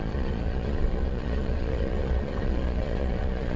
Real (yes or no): no